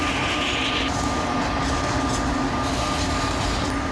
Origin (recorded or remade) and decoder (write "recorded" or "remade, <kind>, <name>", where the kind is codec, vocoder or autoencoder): recorded